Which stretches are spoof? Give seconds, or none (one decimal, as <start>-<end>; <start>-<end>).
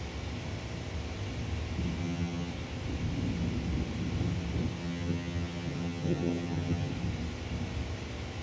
2.0-2.5; 4.8-6.9